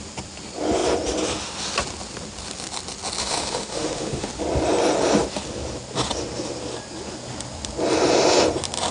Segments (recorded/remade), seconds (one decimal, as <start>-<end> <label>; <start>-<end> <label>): 0.0-3.2 recorded; 3.2-4.3 remade; 4.3-8.9 recorded

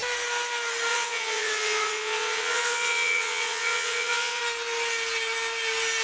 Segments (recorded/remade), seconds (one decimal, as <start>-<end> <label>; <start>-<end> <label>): 0.0-0.9 recorded; 0.9-4.4 remade; 4.4-6.0 recorded

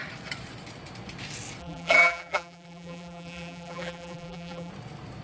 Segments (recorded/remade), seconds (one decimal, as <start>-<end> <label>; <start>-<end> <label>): 0.0-1.6 recorded; 1.6-4.7 remade; 4.7-5.2 recorded

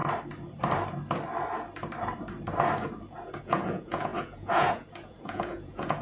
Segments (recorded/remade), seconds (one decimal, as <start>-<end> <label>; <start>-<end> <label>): 0.0-3.4 recorded; 3.4-6.0 remade